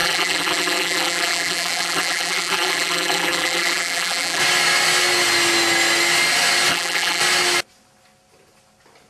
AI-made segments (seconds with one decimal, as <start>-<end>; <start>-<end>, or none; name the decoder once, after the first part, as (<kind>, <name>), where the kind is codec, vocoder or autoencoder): 0.0-4.4 (vocoder, BigVGAN v2); 6.7-7.2